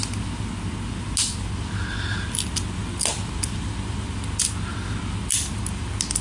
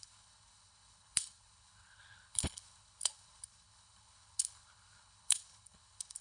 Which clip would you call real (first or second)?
first